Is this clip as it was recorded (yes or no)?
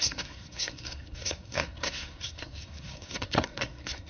no